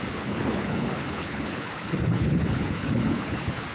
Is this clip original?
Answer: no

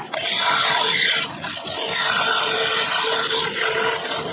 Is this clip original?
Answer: yes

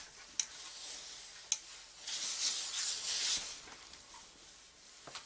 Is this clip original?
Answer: yes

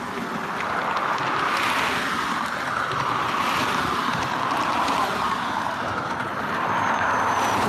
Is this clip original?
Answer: yes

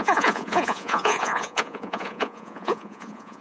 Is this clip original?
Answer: no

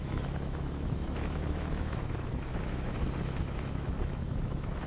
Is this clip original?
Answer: no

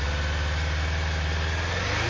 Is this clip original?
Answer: yes